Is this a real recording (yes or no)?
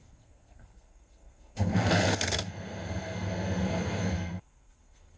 no